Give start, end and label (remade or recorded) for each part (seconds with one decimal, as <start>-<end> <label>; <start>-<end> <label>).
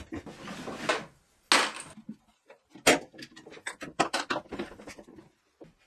0.0-5.9 recorded